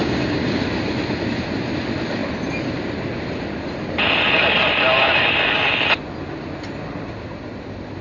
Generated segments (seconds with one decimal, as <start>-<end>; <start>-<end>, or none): 0.0-0.6